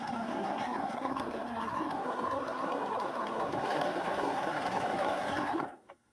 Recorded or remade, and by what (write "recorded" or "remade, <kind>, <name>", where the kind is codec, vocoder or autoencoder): remade, codec, SNAC